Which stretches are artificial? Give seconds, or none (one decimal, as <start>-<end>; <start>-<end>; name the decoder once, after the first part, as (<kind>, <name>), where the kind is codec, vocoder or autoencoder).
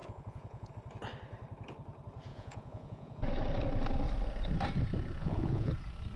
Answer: 0.0-0.7 (vocoder, Vocos); 2.3-3.2; 5.2-5.7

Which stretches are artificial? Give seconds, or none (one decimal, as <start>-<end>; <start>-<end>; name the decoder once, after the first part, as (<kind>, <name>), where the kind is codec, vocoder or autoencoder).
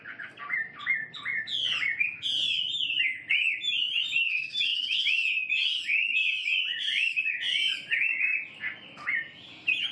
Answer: 6.1-7.9 (vocoder, Vocos)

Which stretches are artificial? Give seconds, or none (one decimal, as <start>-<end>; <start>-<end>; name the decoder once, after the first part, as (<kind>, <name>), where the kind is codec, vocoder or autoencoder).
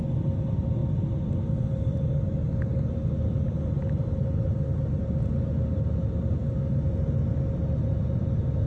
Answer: 0.8-2.2 (vocoder, BigVGAN v2)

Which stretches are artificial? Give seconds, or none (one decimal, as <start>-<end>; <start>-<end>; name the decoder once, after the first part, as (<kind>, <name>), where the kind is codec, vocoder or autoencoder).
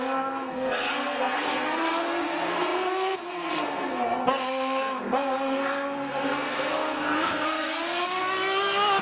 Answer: 0.0-8.2 (codec, SNAC)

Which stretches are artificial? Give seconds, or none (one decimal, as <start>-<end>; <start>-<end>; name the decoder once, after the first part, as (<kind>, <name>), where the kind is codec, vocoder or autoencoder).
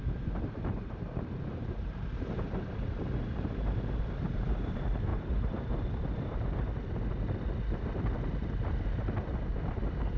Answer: 0.0-6.8 (vocoder, BigVGAN v2); 9.3-10.2